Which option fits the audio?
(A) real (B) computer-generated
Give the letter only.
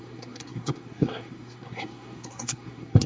B